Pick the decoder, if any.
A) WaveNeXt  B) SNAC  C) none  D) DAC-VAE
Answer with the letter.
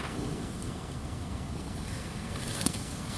B